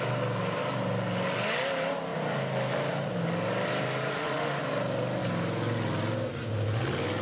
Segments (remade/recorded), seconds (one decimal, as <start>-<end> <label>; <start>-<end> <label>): 0.0-4.1 recorded; 4.1-4.6 remade; 4.6-7.2 recorded

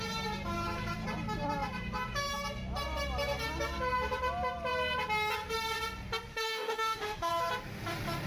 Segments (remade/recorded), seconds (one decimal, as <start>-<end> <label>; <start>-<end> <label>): 0.0-6.3 recorded; 6.3-7.3 remade; 7.3-8.3 recorded

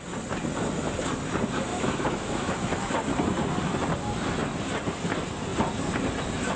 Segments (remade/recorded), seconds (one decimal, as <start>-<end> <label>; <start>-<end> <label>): 0.0-1.7 recorded; 1.7-2.9 remade; 2.9-6.6 recorded